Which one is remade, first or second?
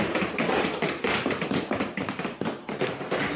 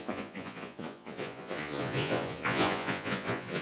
second